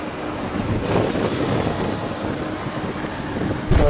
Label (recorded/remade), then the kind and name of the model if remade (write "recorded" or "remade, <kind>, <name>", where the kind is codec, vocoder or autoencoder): recorded